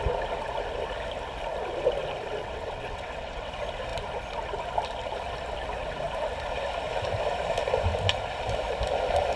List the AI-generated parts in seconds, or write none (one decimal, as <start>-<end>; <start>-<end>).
2.4-3.5